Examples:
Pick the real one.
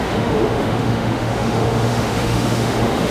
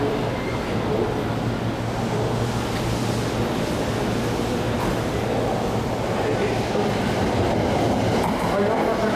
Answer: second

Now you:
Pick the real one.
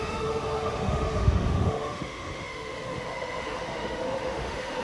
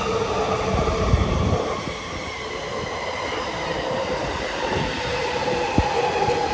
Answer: second